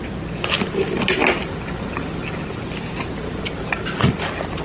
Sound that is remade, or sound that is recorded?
recorded